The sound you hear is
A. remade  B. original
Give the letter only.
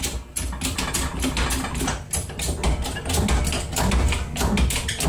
B